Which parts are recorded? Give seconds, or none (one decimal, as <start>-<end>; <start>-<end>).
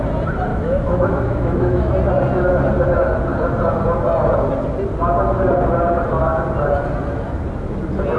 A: 0.0-0.5; 1.9-8.2